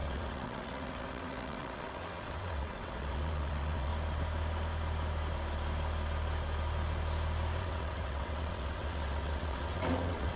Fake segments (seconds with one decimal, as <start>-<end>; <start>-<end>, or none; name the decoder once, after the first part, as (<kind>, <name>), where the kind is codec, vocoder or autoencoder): 0.0-3.9 (vocoder, WaveNeXt); 7.6-10.4